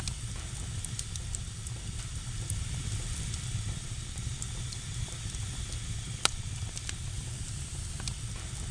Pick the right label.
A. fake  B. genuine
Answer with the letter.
A